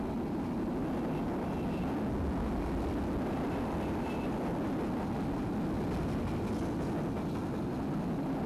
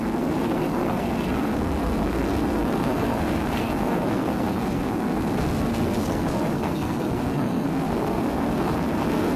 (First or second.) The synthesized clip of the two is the second